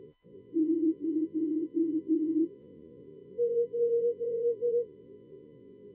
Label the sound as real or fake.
fake